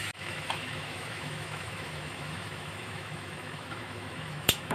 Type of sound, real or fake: fake